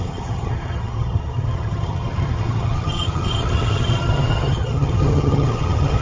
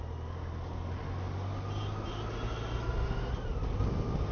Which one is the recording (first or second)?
second